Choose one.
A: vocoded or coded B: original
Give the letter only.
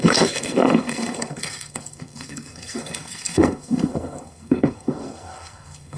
A